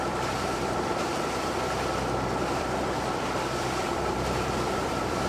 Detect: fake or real fake